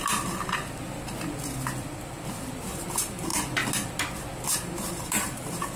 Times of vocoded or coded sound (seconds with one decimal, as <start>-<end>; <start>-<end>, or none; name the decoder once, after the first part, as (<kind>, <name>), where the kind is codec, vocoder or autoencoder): 2.6-3.3 (vocoder, BigVGAN v2); 4.9-5.8